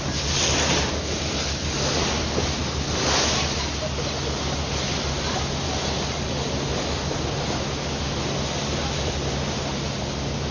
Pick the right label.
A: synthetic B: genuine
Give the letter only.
B